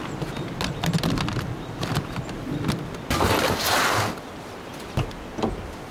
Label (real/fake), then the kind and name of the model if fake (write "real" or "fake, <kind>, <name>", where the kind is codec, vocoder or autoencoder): real